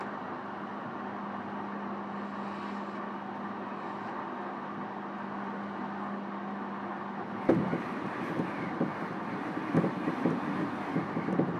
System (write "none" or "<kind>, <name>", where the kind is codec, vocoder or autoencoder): none